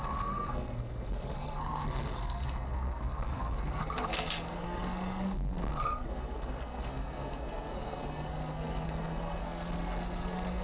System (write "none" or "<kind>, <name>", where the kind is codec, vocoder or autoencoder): codec, SNAC